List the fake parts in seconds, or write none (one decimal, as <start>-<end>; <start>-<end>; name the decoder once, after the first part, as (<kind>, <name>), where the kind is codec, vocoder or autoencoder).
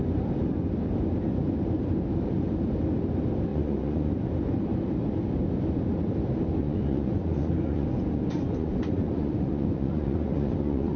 3.5-4.1 (vocoder, Vocos); 6.6-11.0